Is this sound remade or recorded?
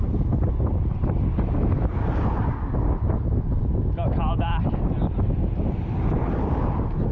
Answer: recorded